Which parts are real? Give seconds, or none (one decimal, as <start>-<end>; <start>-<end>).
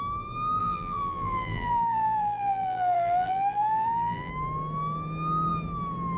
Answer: 0.0-0.6; 4.3-6.2